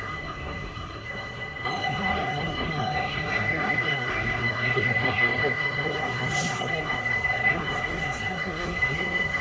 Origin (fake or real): fake